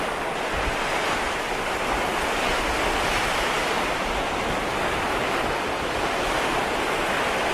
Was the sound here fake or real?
real